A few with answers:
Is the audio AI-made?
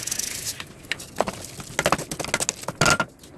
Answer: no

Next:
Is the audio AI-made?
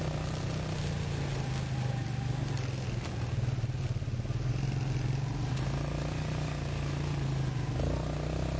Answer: no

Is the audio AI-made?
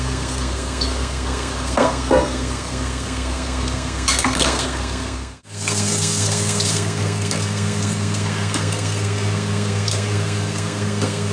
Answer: yes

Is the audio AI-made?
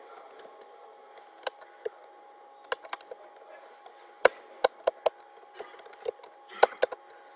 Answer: no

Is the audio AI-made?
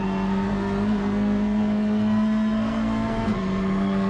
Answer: yes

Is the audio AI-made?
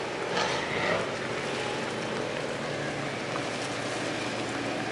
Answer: no